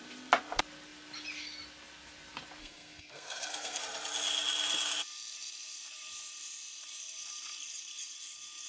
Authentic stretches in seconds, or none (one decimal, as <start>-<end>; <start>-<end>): 0.0-2.6; 3.8-8.7